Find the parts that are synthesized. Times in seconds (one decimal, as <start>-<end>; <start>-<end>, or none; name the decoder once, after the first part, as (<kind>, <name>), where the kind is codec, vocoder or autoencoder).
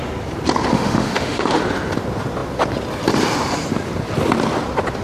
0.7-1.6 (autoencoder, DAC-VAE)